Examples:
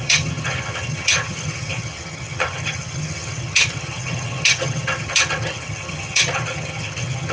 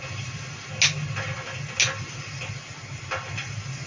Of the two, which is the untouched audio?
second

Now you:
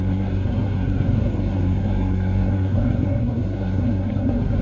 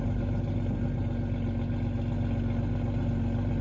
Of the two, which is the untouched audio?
second